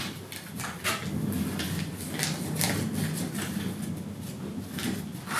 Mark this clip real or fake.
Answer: real